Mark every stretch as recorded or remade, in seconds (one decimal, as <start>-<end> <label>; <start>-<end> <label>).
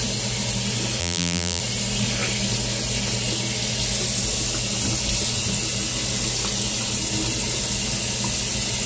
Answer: 0.0-1.0 recorded; 1.0-1.6 remade; 1.6-8.9 recorded